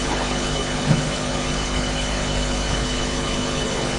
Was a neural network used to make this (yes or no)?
yes